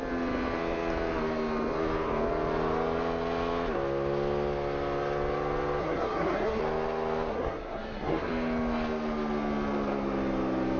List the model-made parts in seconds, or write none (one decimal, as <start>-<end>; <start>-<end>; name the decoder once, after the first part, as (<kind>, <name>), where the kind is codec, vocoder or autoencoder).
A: 5.8-6.6 (codec, SNAC); 7.3-8.3